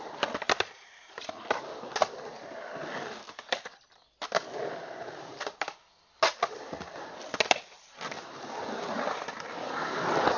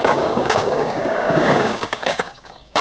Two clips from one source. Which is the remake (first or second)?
second